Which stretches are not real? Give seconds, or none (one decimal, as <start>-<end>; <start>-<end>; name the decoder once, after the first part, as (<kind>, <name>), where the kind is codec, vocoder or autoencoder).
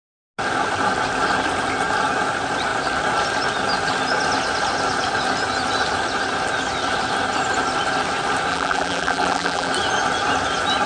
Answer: 8.5-9.7 (vocoder, BigVGAN v2)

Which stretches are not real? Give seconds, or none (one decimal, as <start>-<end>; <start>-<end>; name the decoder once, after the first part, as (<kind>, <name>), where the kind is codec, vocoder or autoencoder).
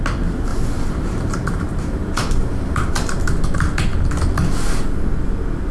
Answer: 0.5-3.2 (vocoder, BigVGAN v2)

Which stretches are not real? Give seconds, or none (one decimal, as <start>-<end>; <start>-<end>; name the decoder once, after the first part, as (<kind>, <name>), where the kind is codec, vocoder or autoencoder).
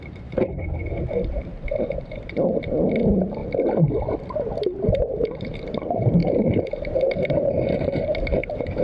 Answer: 0.0-3.4 (vocoder, BigVGAN v2); 5.4-8.8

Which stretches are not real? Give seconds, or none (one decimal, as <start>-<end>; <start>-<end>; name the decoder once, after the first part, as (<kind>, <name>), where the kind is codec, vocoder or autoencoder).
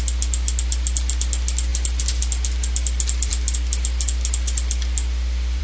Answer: none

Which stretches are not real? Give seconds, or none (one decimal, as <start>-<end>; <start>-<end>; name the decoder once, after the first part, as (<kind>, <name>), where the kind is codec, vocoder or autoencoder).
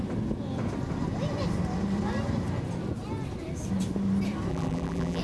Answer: 4.5-5.2 (vocoder, BigVGAN v2)